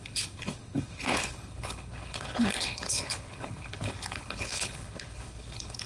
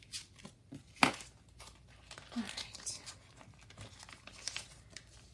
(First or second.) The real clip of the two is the second